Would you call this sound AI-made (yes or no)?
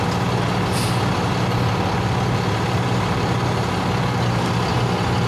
no